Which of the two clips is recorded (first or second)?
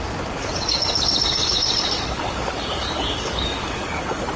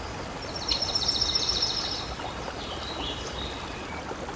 second